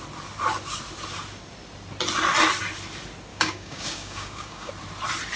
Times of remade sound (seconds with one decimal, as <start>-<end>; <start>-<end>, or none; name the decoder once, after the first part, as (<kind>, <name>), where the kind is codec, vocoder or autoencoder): 3.3-4.7 (codec, DAC)